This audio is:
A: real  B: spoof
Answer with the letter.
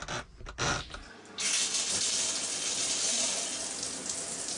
A